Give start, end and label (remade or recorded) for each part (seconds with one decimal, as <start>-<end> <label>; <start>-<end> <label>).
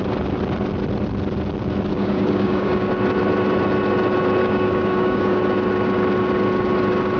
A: 0.0-1.9 recorded; 1.9-2.9 remade; 2.9-4.4 recorded; 4.4-5.4 remade; 5.4-7.2 recorded